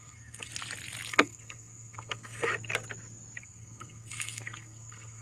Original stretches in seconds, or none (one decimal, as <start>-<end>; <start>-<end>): 0.5-1.1; 2.5-3.4